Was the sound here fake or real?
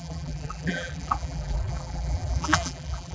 fake